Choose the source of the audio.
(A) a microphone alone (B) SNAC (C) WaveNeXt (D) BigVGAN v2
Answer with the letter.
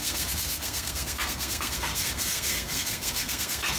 B